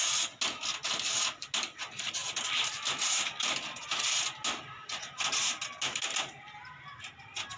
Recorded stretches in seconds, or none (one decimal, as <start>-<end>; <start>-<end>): 0.0-7.6